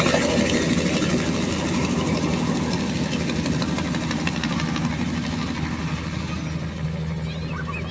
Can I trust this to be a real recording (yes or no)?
yes